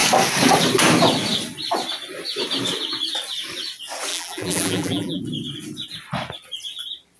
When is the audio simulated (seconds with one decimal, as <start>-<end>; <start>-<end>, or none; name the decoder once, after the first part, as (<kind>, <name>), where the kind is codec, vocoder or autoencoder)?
4.1-5.2 (vocoder, BigVGAN v2)